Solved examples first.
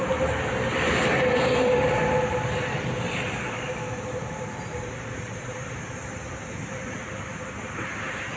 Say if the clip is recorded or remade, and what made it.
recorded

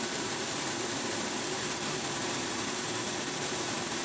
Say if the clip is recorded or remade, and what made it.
remade, vocoder, BigVGAN v2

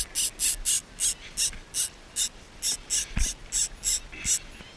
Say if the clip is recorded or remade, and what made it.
recorded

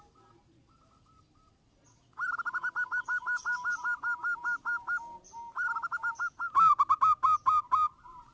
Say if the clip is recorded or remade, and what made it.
recorded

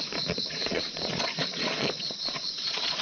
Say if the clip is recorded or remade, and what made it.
remade, vocoder, Vocos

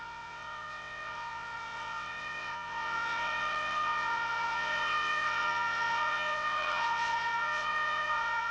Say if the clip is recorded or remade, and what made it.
remade, vocoder, WaveNeXt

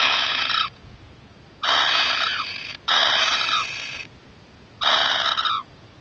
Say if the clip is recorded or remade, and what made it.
remade, vocoder, Vocos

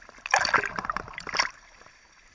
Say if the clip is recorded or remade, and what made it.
recorded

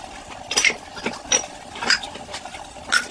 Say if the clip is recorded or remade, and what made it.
recorded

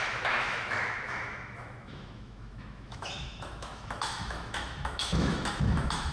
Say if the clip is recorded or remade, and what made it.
remade, autoencoder, DAC-VAE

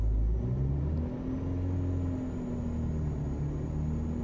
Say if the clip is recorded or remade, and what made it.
recorded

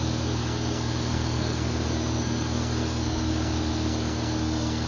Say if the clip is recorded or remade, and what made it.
remade, codec, SNAC